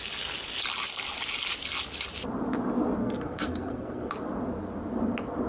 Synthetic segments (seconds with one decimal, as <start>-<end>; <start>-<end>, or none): 3.0-4.1